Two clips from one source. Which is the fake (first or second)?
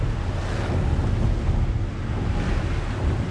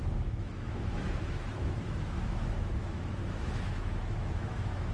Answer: second